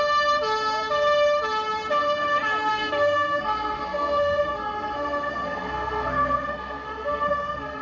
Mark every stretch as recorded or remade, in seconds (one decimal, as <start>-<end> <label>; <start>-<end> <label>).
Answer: 0.0-2.7 recorded; 2.7-7.8 remade